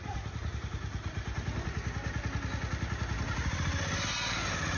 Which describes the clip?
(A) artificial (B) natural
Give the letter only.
B